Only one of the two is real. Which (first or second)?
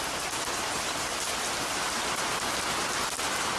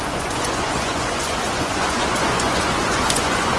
first